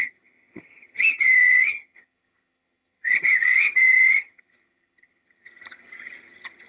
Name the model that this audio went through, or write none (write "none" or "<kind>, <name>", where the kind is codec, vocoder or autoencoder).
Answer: vocoder, HiFi-GAN